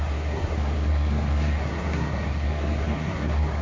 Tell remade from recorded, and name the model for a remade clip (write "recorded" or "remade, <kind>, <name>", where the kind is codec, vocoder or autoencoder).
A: remade, codec, SNAC